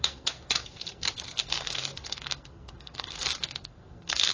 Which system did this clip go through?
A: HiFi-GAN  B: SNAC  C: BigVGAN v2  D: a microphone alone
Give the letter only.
B